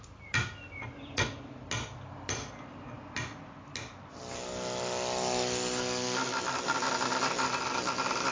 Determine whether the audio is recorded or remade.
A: recorded